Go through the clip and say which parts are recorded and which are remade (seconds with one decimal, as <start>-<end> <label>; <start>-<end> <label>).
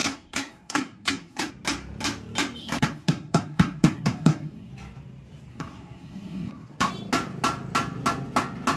0.0-1.5 remade; 1.5-2.6 recorded; 2.6-4.7 remade; 4.7-5.5 recorded; 5.5-6.9 remade; 6.9-8.8 recorded